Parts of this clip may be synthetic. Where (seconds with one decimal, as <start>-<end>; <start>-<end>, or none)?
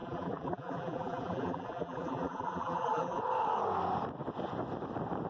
0.0-3.2